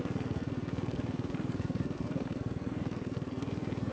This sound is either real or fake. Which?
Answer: fake